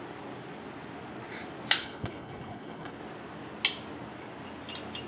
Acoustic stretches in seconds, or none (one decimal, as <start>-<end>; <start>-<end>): 0.0-1.8; 3.0-5.1